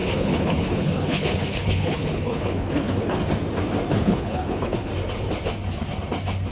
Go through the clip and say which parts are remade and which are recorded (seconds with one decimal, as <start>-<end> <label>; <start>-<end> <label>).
0.0-3.2 remade; 3.2-3.9 recorded; 3.9-4.9 remade; 4.9-6.5 recorded